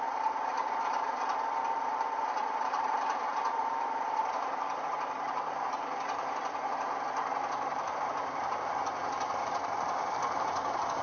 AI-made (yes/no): yes